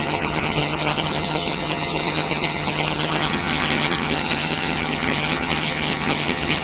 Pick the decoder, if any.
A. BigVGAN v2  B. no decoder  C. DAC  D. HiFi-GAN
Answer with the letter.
D